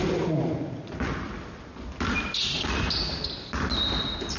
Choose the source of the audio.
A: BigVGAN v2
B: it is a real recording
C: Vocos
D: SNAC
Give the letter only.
B